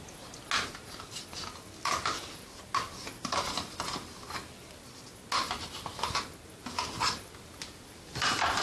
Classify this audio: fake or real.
real